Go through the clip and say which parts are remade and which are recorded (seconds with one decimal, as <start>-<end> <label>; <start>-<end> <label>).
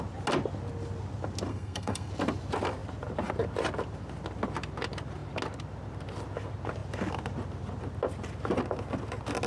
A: 0.0-1.5 recorded; 1.5-2.1 remade; 2.1-9.5 recorded